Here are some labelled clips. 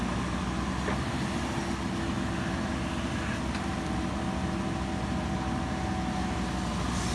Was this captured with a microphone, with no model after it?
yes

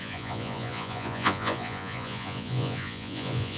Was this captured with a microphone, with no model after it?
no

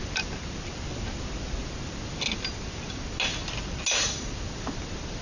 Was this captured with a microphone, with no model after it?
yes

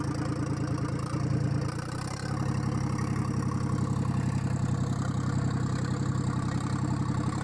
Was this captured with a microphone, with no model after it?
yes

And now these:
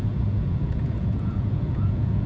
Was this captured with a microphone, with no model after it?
no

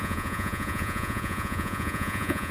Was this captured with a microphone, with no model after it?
no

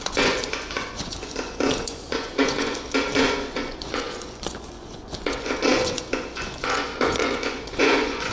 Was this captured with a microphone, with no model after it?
no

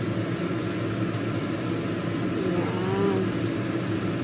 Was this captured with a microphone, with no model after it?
yes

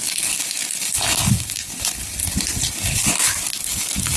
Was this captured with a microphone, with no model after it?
yes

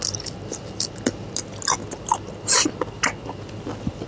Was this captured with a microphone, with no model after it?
yes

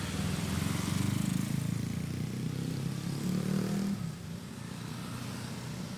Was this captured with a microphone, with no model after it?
yes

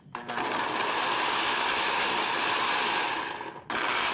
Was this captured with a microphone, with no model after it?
yes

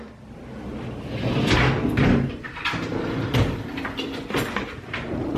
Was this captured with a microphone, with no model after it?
yes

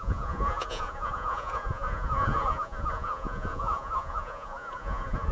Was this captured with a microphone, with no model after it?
no